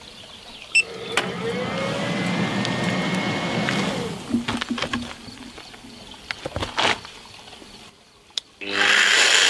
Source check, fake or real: real